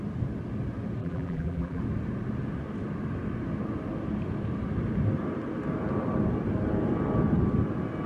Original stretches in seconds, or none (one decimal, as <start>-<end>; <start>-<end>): 0.0-1.0; 1.8-8.1